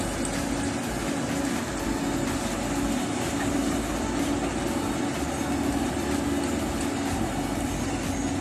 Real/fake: real